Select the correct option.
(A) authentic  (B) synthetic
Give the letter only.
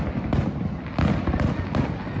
A